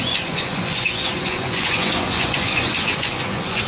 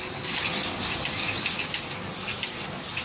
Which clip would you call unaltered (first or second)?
second